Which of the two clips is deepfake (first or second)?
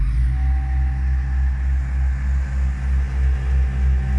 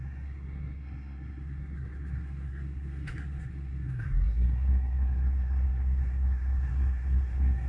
second